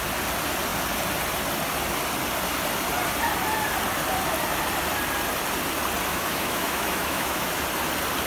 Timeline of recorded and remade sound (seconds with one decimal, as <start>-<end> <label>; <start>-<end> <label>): 0.0-6.1 recorded; 6.1-7.5 remade; 7.5-8.3 recorded